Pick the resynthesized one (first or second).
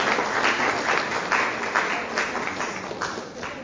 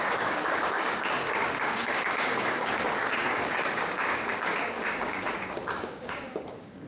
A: second